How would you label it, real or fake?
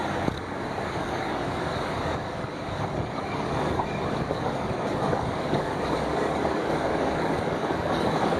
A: fake